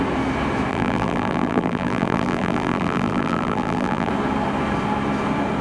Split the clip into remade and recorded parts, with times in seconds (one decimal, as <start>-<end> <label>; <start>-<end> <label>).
0.0-0.7 recorded; 0.7-4.1 remade; 4.1-5.6 recorded